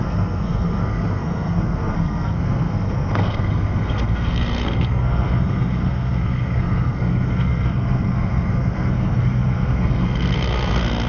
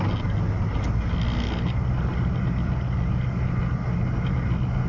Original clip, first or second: second